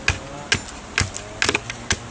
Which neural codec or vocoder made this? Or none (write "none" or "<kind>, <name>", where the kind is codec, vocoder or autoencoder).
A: none